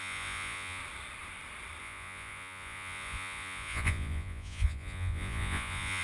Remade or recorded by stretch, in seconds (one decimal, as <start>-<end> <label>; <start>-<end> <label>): 0.0-0.8 remade; 0.8-1.8 recorded; 1.8-6.0 remade